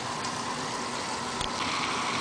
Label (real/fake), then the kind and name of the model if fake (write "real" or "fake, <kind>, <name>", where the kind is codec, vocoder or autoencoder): real